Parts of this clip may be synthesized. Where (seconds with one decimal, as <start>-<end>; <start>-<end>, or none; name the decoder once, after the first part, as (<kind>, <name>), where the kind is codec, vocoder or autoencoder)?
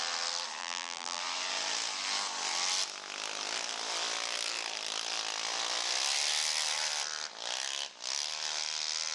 0.6-1.2 (vocoder, BigVGAN v2)